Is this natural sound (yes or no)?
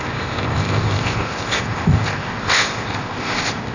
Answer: no